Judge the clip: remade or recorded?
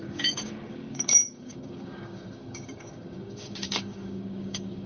remade